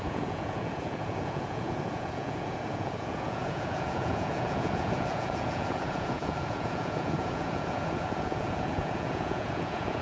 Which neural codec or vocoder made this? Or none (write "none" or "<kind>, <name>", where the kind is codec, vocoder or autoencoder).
vocoder, Vocos